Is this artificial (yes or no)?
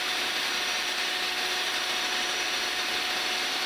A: no